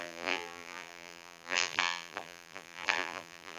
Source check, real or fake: fake